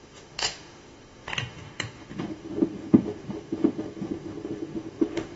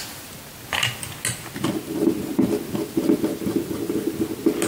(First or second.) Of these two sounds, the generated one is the first